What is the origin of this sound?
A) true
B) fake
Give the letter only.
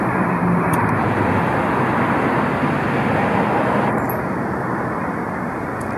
A